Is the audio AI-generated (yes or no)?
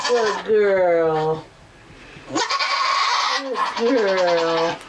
no